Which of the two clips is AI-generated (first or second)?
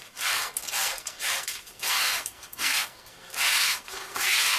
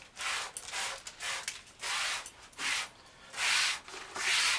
first